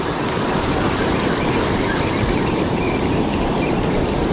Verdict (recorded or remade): remade